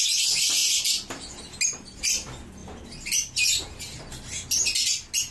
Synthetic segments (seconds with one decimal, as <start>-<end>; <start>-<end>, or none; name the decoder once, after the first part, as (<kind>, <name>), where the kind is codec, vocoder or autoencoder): none